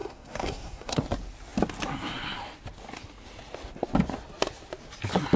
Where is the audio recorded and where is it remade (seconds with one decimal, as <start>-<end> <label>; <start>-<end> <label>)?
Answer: 0.0-1.0 remade; 1.0-5.4 recorded